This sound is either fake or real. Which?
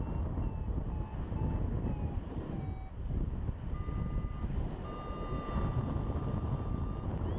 real